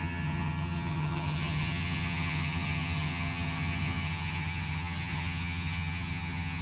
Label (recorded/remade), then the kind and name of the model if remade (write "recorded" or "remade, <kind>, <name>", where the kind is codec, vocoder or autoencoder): remade, vocoder, HiFi-GAN